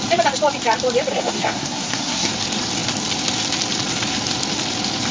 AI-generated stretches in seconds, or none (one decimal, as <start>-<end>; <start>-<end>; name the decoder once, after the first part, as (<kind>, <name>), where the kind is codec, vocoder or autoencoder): 1.1-2.3 (codec, SNAC)